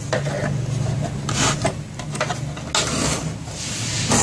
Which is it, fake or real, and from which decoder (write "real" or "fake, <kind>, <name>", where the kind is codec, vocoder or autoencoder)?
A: real